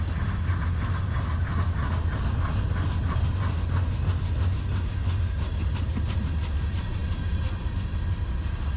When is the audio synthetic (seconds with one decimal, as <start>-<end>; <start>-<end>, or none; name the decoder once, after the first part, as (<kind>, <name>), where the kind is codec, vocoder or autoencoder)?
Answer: none